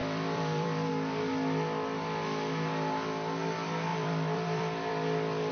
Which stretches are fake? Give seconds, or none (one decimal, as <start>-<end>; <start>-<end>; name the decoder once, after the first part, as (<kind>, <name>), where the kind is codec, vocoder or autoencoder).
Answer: 0.0-0.9 (vocoder, BigVGAN v2); 3.9-5.5